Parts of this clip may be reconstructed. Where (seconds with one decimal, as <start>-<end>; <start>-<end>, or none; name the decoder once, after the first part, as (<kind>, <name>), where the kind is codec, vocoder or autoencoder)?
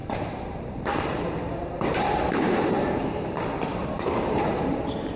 0.0-3.0 (vocoder, BigVGAN v2); 3.7-5.2